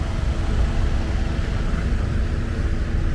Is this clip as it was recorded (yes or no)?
yes